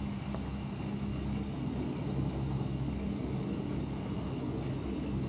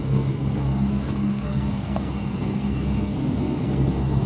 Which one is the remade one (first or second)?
second